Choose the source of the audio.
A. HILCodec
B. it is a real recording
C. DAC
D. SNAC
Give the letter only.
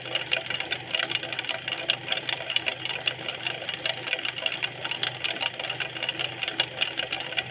B